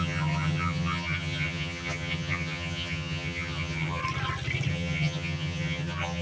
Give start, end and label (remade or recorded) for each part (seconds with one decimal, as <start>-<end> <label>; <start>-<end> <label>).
0.0-4.0 remade; 4.0-4.7 recorded; 4.7-6.2 remade